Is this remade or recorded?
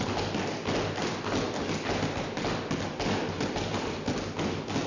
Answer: recorded